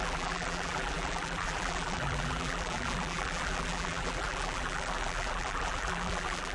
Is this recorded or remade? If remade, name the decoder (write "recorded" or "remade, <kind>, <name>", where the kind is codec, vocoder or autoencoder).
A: remade, vocoder, BigVGAN v2